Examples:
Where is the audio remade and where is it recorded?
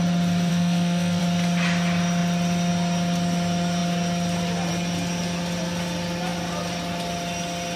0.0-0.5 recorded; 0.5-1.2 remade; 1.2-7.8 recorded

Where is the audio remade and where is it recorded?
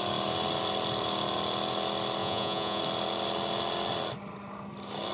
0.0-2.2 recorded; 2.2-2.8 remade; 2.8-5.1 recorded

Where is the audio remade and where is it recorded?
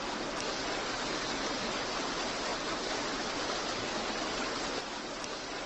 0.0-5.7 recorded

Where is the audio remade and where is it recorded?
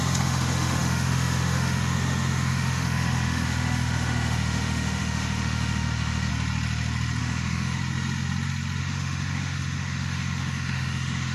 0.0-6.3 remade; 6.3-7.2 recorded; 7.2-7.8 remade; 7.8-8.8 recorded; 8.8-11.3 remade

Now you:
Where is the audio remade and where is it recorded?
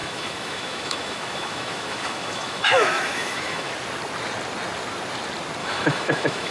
0.0-3.7 remade; 3.7-5.6 recorded; 5.6-6.5 remade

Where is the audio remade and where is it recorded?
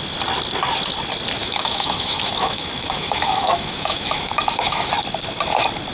0.0-1.4 recorded; 1.4-4.9 remade; 4.9-5.9 recorded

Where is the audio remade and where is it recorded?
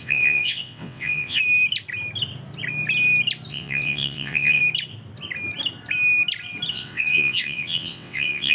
0.0-1.4 remade; 1.4-3.5 recorded; 3.5-4.6 remade; 4.6-6.7 recorded; 6.7-8.5 remade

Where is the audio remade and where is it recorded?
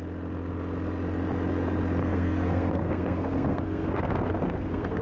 0.0-2.0 recorded; 2.0-5.0 remade